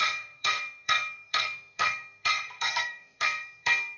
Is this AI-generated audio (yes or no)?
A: yes